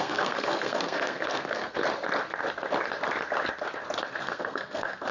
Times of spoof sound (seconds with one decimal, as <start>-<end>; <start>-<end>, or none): 0.0-1.8; 4.2-5.1